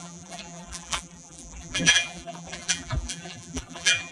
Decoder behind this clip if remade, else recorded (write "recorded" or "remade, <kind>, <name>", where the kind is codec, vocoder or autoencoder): remade, vocoder, BigVGAN v2